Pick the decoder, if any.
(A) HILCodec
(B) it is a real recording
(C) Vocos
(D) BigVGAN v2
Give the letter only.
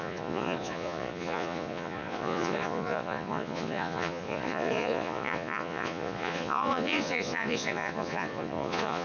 C